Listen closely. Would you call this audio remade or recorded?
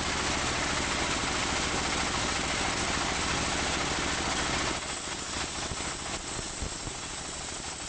recorded